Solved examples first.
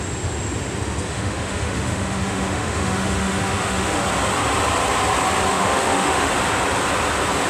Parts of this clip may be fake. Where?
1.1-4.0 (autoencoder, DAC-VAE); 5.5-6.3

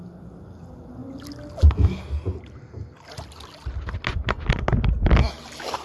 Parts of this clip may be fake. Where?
none